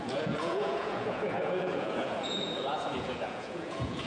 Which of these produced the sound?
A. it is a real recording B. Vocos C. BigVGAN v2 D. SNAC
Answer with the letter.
B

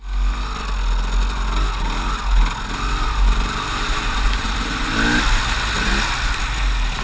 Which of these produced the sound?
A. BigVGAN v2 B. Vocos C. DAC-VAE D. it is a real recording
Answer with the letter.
D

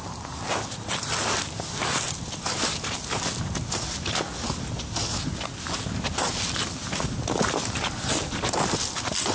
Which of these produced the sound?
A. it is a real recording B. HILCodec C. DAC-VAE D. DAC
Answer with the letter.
A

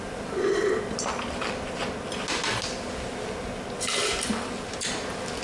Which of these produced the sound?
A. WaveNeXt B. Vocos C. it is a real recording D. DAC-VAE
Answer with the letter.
C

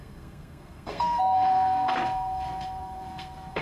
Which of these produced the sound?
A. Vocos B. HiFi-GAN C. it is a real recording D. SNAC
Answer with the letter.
D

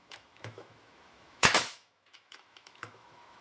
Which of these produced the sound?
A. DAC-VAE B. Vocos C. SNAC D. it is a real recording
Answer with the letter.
A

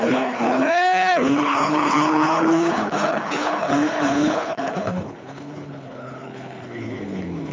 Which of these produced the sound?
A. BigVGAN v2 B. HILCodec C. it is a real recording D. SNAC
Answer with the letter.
B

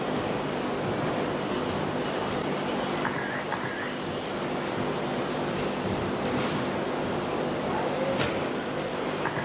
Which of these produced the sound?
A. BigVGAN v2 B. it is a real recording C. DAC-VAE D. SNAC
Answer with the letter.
B